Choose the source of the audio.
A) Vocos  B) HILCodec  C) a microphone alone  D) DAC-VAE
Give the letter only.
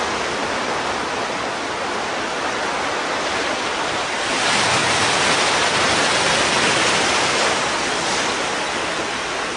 C